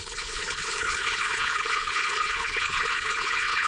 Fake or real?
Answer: fake